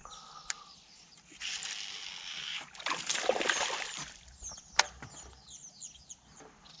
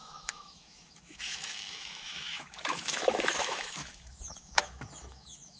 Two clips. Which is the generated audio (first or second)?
second